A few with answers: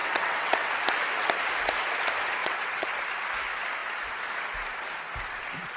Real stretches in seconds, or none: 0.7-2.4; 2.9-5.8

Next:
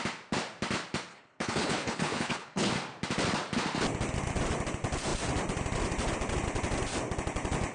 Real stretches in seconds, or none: 0.0-1.1; 2.7-7.7

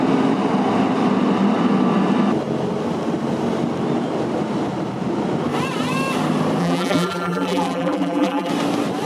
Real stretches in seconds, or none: 0.0-6.6; 8.5-9.0

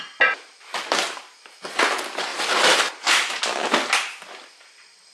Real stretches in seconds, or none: 0.0-5.1

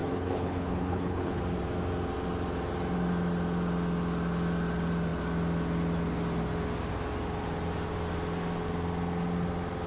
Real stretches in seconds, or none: 1.4-9.9

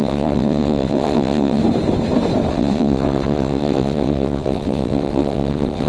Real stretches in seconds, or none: 1.6-2.5

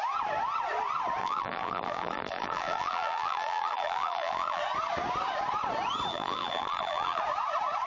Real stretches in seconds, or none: 0.0-1.2; 4.6-6.1; 7.2-7.9

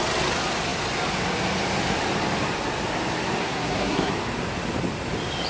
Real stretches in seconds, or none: 0.0-3.4; 4.1-5.5